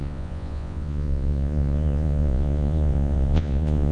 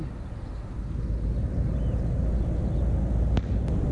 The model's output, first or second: first